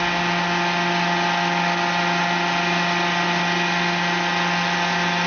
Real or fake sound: real